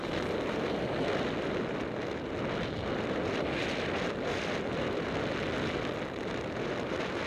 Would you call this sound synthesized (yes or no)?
no